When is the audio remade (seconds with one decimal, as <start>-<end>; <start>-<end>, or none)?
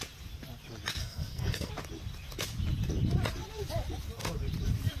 1.0-1.7